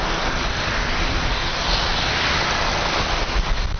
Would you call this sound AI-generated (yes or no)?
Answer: no